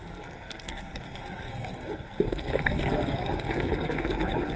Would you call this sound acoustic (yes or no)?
no